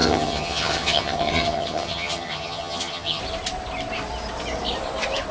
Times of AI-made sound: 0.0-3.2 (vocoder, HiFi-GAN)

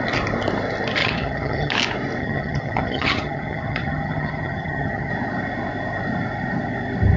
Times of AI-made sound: 1.0-1.7 (vocoder, HiFi-GAN); 2.2-5.1

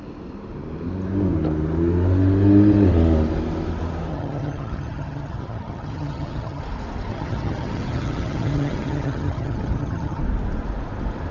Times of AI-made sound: 4.1-6.6 (vocoder, HiFi-GAN); 7.1-10.2